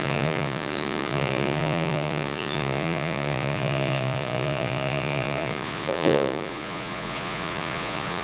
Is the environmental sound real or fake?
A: fake